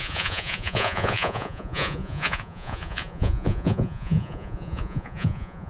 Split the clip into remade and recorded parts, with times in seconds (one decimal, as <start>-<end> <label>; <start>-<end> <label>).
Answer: 0.0-5.7 remade